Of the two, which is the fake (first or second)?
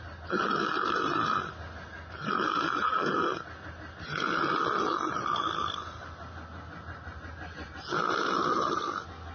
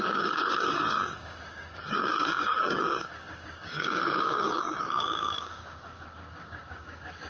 second